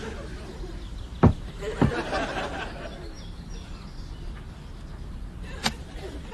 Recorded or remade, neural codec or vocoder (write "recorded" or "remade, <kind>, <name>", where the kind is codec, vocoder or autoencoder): recorded